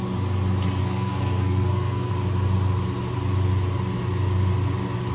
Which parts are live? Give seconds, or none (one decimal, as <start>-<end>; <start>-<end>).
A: 0.0-0.8; 2.1-5.1